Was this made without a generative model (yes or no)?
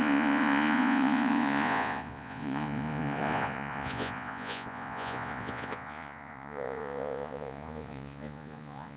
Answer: no